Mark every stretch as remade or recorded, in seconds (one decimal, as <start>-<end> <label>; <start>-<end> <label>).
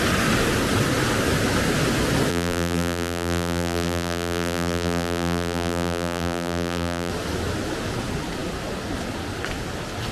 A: 0.0-2.3 recorded; 2.3-7.1 remade; 7.1-10.1 recorded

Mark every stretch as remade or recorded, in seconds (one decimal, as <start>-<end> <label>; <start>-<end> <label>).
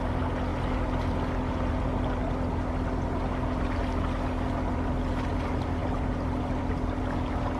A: 0.0-7.6 recorded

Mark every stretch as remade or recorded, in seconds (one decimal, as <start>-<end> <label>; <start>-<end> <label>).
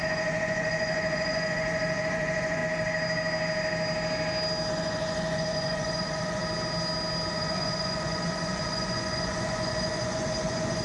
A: 0.0-2.6 remade; 2.6-4.7 recorded; 4.7-6.4 remade; 6.4-7.3 recorded; 7.3-10.8 remade